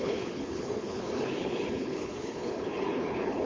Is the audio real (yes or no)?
no